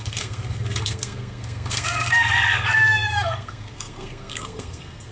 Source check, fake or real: fake